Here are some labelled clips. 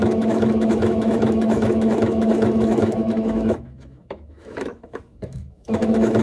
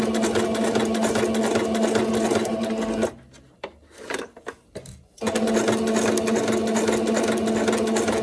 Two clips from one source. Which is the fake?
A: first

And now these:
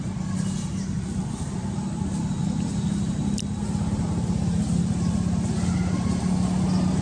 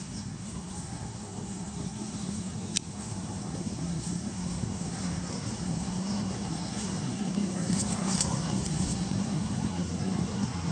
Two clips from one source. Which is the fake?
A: second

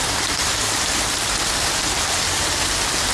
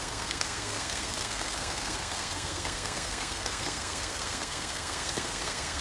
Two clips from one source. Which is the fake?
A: second